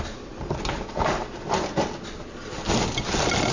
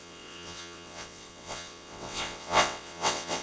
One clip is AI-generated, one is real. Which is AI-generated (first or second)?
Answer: second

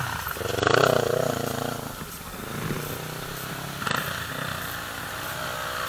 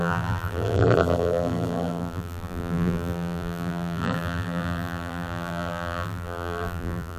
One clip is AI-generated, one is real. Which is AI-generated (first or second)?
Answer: second